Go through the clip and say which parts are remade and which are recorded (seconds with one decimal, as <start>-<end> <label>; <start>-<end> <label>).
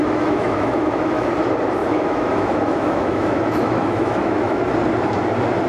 0.0-1.3 remade; 1.3-1.8 recorded; 1.8-4.6 remade; 4.6-5.7 recorded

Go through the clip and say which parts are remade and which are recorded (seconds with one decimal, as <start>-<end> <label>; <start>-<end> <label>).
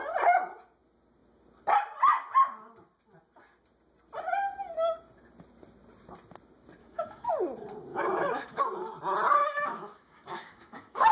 0.0-6.8 recorded; 6.8-7.3 remade; 7.3-7.9 recorded; 7.9-8.6 remade; 8.6-9.4 recorded; 9.4-11.1 remade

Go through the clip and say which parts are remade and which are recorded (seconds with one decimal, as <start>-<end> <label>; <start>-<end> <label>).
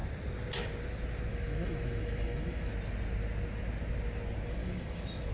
0.0-1.3 recorded; 1.3-2.7 remade; 2.7-4.6 recorded; 4.6-5.3 remade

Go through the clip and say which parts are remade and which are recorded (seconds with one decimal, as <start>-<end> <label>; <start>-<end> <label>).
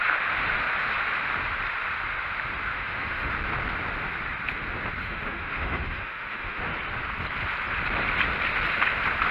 0.0-2.7 recorded; 2.7-3.3 remade; 3.3-5.0 recorded; 5.0-6.6 remade; 6.6-9.3 recorded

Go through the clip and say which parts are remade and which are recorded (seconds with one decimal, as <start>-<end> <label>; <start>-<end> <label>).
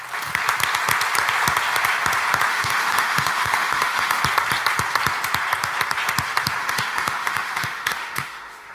0.0-2.5 recorded; 2.5-4.2 remade; 4.2-6.6 recorded; 6.6-8.7 remade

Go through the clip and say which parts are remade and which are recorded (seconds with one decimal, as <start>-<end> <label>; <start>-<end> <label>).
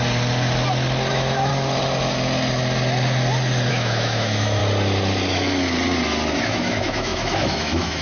0.0-1.1 recorded; 1.1-1.5 remade; 1.5-3.7 recorded; 3.7-4.6 remade; 4.6-6.4 recorded; 6.4-8.0 remade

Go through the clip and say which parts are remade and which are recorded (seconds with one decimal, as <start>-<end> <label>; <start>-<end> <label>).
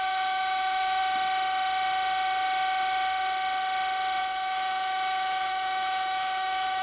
0.0-1.0 remade; 1.0-4.2 recorded; 4.2-6.8 remade